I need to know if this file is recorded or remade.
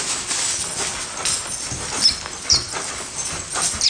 recorded